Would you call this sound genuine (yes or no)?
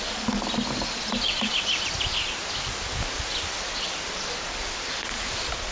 yes